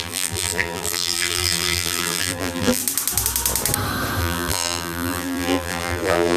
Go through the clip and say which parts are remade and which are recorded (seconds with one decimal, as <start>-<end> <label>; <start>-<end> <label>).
0.0-2.8 remade; 2.8-4.2 recorded; 4.2-6.4 remade

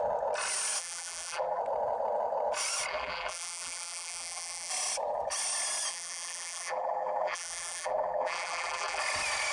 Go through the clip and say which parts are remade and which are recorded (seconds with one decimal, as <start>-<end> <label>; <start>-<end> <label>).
0.0-0.8 recorded; 0.8-1.6 remade; 1.6-2.9 recorded; 2.9-4.7 remade; 4.7-5.9 recorded; 5.9-9.0 remade; 9.0-9.5 recorded

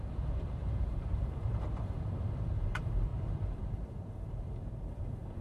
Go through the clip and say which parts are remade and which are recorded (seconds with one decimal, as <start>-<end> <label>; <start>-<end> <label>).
0.0-5.4 remade

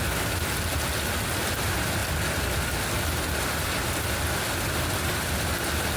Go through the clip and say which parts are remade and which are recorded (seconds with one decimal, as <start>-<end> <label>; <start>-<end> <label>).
0.0-6.0 recorded